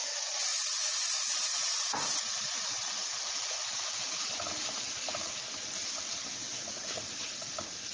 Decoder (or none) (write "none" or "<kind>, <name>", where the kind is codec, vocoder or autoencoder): vocoder, BigVGAN v2